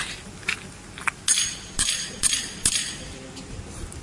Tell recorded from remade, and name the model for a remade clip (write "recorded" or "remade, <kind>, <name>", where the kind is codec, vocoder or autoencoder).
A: recorded